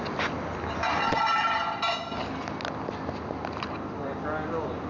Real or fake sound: real